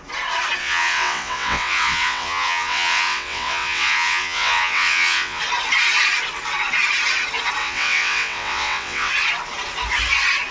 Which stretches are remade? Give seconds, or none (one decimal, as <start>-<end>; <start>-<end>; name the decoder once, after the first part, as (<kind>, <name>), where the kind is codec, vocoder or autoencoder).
0.6-5.4 (vocoder, WaveNeXt); 7.6-9.1